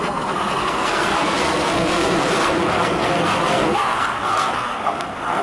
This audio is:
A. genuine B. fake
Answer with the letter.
B